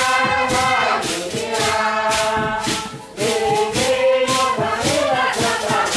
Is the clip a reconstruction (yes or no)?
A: no